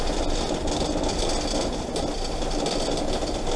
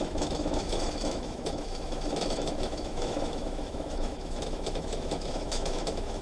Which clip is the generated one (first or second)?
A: second